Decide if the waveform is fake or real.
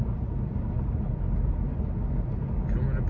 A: real